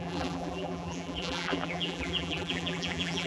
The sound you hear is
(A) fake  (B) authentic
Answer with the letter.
A